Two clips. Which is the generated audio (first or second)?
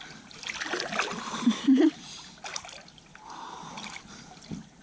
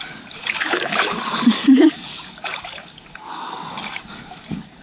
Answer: second